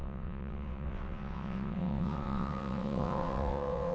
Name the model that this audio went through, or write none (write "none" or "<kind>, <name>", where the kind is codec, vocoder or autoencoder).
vocoder, WaveNeXt